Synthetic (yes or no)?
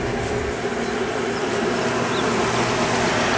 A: no